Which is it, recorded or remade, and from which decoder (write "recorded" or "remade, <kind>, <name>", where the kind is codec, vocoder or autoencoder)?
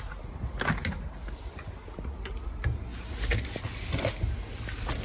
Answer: recorded